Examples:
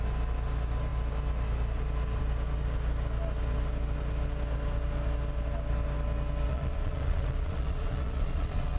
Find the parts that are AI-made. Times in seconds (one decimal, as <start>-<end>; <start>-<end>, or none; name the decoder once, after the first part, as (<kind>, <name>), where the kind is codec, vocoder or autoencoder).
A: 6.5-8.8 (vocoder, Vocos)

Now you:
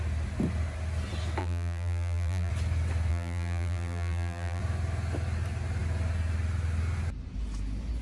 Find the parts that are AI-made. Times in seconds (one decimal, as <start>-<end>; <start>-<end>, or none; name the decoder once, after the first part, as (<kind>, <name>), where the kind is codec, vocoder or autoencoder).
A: 1.4-2.5 (vocoder, BigVGAN v2); 3.1-4.6

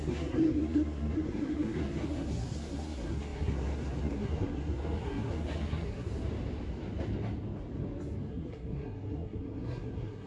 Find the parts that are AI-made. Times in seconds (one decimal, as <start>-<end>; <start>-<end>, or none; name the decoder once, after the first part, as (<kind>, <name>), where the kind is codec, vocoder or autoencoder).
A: 0.0-6.1 (codec, SNAC); 8.3-10.3